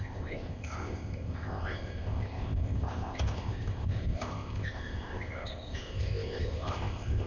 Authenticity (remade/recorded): remade